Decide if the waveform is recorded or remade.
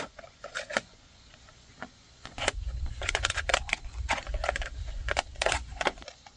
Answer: remade